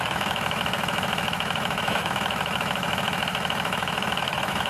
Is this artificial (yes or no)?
yes